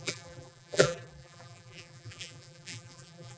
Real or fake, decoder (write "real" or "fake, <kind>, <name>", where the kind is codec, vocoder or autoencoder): fake, vocoder, BigVGAN v2